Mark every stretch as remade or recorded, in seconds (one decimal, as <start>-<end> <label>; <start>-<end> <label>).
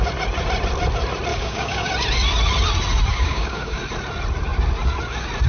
0.0-1.3 recorded; 1.3-1.9 remade; 1.9-3.1 recorded; 3.1-3.8 remade; 3.8-5.5 recorded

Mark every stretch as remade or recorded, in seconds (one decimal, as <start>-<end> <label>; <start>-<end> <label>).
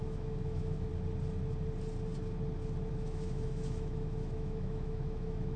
0.0-0.9 remade; 0.9-2.9 recorded; 2.9-5.6 remade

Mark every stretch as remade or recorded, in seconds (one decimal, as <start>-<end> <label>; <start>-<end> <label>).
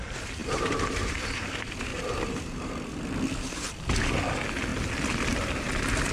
0.0-0.4 recorded; 0.4-1.5 remade; 1.5-1.9 recorded; 1.9-2.7 remade; 2.7-6.1 recorded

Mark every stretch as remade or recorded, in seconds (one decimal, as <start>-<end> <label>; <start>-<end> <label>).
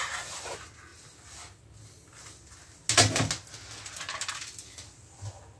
0.0-5.6 recorded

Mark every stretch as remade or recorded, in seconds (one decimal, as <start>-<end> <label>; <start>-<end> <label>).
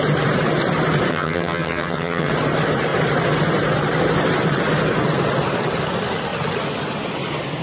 0.0-1.1 recorded; 1.1-2.3 remade; 2.3-7.6 recorded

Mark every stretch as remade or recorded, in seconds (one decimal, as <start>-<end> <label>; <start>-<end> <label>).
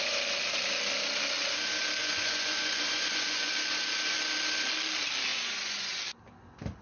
0.0-2.0 recorded; 2.0-3.5 remade; 3.5-5.3 recorded; 5.3-6.0 remade; 6.0-6.8 recorded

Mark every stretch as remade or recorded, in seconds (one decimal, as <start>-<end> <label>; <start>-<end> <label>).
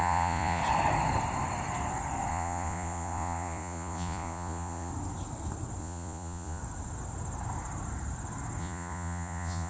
0.0-0.6 remade; 0.6-2.3 recorded; 2.3-4.9 remade; 4.9-5.8 recorded; 5.8-6.6 remade; 6.6-8.6 recorded; 8.6-9.7 remade